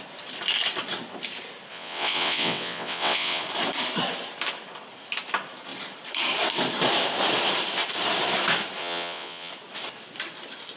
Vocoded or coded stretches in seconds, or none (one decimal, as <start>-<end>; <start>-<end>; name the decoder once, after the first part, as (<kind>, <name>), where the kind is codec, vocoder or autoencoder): 1.7-3.4 (vocoder, WaveNeXt); 8.8-9.5